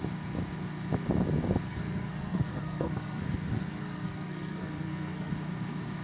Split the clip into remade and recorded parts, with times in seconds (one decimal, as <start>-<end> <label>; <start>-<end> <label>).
0.0-1.7 recorded; 1.7-5.3 remade; 5.3-6.0 recorded